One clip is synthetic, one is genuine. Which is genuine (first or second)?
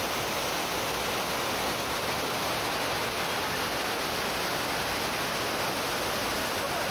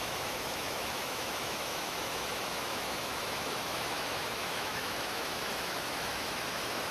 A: first